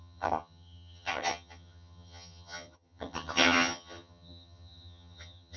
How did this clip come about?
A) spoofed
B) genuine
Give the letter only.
A